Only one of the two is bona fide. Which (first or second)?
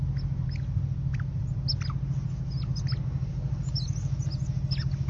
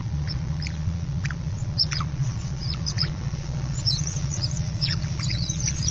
first